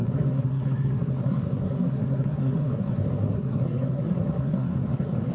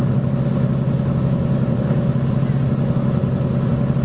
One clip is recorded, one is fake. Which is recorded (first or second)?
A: second